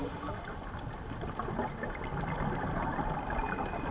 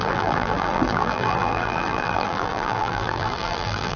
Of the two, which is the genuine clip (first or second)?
first